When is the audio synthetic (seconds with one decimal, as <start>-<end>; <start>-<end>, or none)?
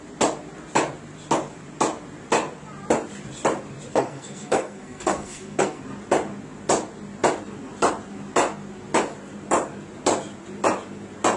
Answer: 3.9-5.8